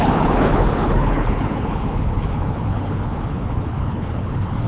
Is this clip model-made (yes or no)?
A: yes